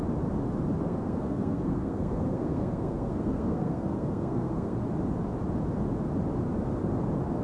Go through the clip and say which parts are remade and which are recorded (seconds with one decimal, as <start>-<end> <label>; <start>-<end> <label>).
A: 0.0-0.8 recorded; 0.8-4.8 remade; 4.8-7.4 recorded